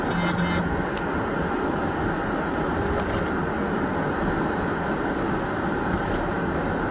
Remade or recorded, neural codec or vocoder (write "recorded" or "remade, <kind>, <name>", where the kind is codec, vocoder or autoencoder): recorded